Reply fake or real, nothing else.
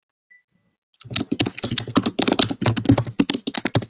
real